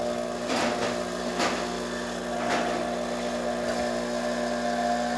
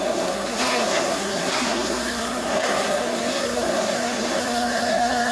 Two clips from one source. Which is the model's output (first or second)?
second